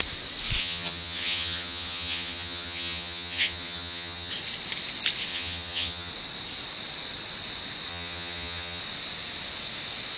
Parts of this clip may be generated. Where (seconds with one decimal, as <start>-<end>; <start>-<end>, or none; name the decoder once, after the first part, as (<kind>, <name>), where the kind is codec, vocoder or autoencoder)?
0.6-4.3 (vocoder, HiFi-GAN); 5.3-6.1; 7.9-8.8